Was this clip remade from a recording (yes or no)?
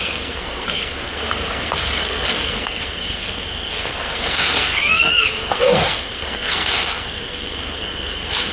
yes